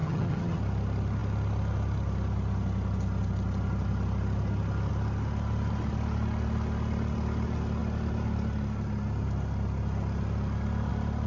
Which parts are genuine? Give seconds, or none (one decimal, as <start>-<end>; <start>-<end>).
0.6-11.3